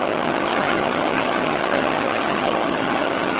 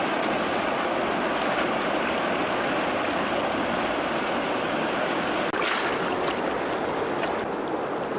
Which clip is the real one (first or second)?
second